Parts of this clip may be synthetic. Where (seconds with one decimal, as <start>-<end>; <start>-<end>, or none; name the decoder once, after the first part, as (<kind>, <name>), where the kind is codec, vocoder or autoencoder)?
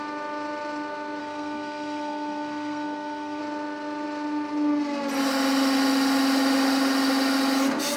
1.2-3.4 (codec, SNAC)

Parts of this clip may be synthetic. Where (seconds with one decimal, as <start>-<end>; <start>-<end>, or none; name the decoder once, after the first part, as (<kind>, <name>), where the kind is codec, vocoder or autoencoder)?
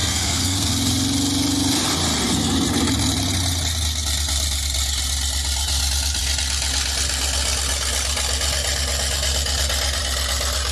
0.0-0.7 (codec, SNAC)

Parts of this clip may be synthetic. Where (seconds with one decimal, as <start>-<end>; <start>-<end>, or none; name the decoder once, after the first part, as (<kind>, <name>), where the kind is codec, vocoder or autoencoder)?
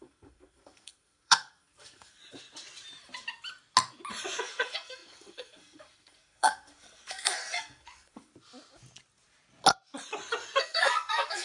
0.0-2.2 (codec, SNAC); 4.4-8.3; 10.6-11.4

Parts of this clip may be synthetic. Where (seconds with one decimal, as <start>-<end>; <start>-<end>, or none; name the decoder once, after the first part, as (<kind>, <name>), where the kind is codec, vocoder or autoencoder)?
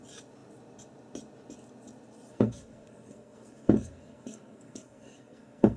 2.3-5.8 (codec, SNAC)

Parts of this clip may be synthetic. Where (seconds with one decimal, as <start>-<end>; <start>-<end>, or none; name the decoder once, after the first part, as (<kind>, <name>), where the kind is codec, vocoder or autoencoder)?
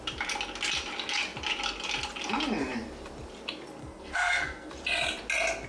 3.8-4.7 (codec, SNAC)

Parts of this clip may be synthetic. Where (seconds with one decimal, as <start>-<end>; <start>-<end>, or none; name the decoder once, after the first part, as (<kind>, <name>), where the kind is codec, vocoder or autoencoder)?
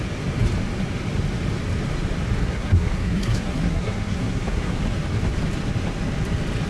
2.4-4.8 (codec, SNAC)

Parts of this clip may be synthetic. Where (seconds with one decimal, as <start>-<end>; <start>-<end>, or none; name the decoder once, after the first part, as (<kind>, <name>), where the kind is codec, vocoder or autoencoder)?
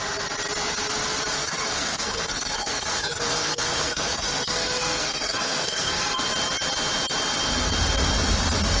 1.4-6.2 (codec, SNAC)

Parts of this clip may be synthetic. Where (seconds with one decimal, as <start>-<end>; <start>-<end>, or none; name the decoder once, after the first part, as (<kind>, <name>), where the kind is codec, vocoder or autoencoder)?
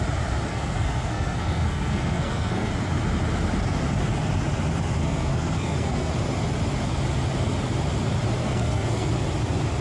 0.5-2.7 (codec, SNAC); 5.0-6.1; 8.4-9.1